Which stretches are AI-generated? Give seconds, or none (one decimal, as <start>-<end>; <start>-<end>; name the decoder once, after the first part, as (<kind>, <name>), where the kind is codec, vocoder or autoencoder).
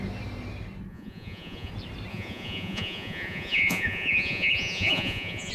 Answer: 0.9-1.7 (vocoder, Vocos); 2.1-5.5